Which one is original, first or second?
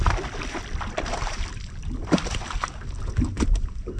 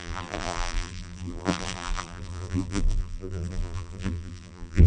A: first